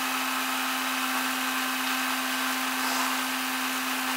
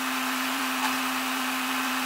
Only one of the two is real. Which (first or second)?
first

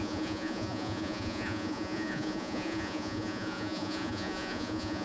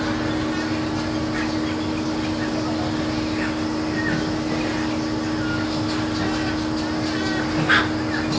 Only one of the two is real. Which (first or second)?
second